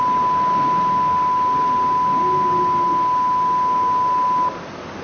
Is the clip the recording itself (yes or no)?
yes